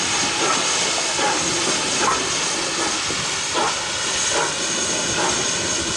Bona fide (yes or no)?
yes